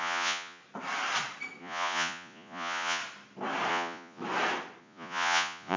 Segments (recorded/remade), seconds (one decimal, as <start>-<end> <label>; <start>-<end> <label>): 0.0-0.6 remade; 0.6-1.6 recorded; 1.6-3.0 remade; 3.0-3.7 recorded; 3.7-4.2 remade; 4.2-4.8 recorded; 4.8-5.8 remade